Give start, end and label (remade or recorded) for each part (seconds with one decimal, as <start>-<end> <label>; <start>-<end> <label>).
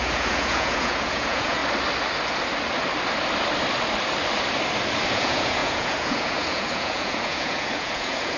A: 0.0-1.6 remade; 1.6-5.1 recorded; 5.1-8.4 remade